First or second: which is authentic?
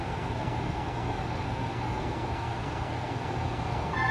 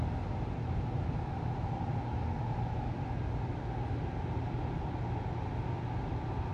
second